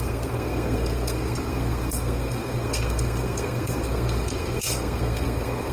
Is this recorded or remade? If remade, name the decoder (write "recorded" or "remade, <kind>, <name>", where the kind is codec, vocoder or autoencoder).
remade, codec, SNAC